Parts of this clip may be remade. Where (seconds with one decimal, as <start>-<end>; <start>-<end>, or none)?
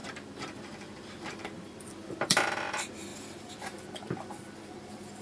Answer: 0.0-5.2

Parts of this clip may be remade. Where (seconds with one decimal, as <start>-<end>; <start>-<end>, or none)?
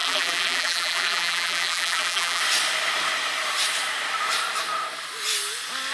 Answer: 0.0-2.4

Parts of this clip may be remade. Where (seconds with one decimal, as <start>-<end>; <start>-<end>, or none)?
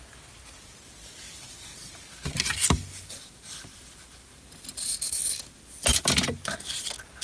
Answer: none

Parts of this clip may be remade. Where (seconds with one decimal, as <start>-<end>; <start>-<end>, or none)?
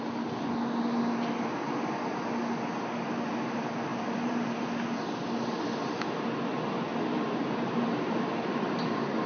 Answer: 3.9-4.6; 6.9-9.3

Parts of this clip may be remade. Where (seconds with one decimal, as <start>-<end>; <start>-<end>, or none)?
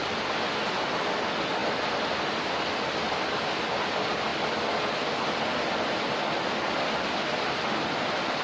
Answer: none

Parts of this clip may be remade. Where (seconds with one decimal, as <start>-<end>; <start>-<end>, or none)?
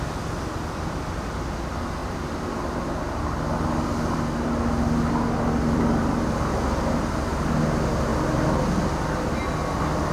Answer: 2.0-3.0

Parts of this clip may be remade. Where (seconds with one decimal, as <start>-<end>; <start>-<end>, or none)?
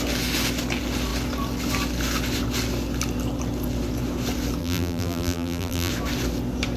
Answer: 4.6-5.9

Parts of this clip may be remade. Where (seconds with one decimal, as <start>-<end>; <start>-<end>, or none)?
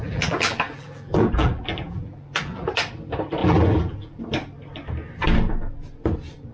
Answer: 0.0-2.7; 3.4-4.2